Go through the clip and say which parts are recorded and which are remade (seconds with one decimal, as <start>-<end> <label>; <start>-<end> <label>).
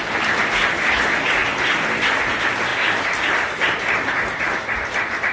0.0-5.3 recorded